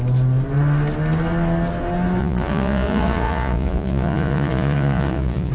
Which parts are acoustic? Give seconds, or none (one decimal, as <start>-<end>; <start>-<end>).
0.0-2.2